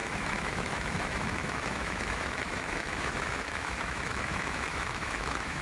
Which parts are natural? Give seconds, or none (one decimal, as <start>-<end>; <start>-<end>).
none